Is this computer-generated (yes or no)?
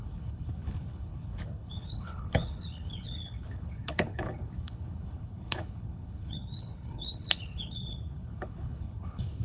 yes